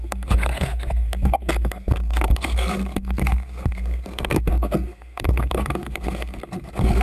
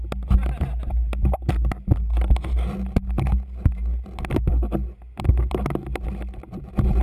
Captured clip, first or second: second